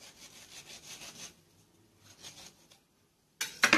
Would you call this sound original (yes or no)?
yes